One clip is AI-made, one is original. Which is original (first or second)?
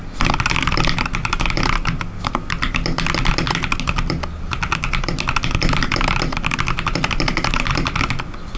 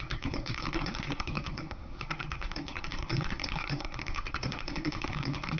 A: first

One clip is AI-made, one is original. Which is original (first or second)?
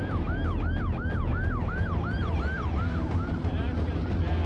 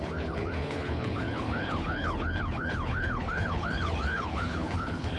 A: first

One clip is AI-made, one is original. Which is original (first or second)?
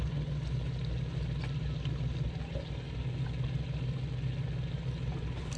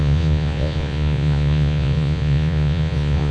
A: first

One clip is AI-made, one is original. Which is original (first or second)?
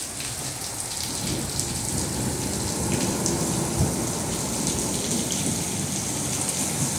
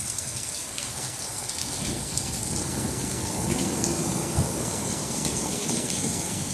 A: first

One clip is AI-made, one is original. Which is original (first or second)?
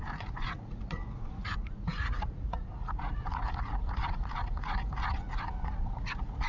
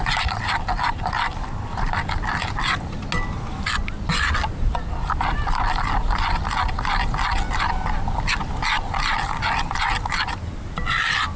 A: second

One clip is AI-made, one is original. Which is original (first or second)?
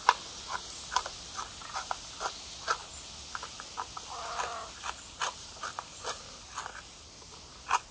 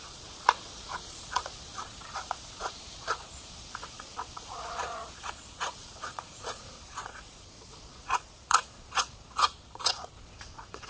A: first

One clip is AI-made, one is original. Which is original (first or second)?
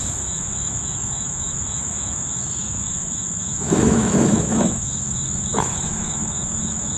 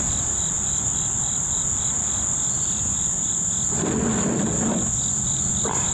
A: second